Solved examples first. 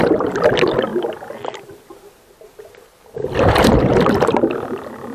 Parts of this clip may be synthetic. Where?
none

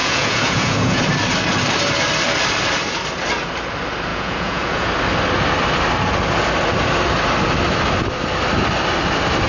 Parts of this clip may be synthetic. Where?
0.0-1.0 (vocoder, Vocos); 4.1-4.9

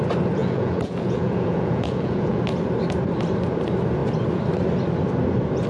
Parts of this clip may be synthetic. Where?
0.4-2.4 (vocoder, Vocos)

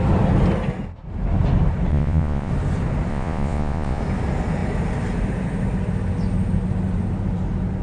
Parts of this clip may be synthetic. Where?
1.9-2.5 (vocoder, Vocos); 3.1-4.0

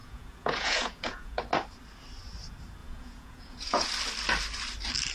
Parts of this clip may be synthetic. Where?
0.0-1.4 (vocoder, Vocos); 2.8-3.9

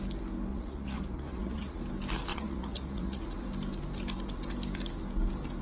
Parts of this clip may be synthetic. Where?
0.5-1.8 (vocoder, Vocos); 2.3-3.2

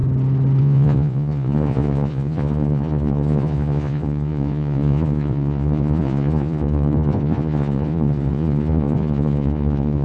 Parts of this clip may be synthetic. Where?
0.6-10.0 (vocoder, Vocos)